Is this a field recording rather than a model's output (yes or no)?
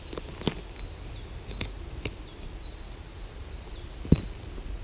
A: yes